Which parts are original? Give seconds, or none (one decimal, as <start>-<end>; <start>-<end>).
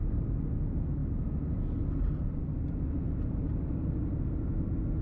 0.0-5.0